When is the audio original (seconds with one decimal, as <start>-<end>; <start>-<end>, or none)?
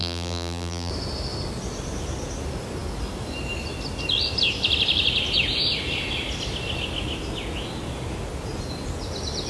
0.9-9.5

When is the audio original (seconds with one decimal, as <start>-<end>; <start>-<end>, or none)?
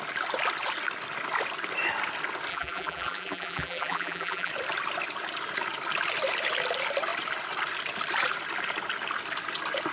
0.0-2.5; 4.5-9.9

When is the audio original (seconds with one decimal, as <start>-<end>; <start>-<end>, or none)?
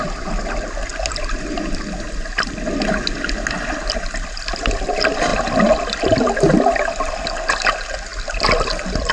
0.9-3.8; 8.1-9.1